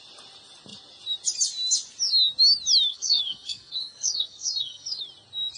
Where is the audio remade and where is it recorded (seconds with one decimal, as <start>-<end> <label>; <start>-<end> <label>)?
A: 0.0-2.9 recorded; 2.9-5.0 remade; 5.0-5.6 recorded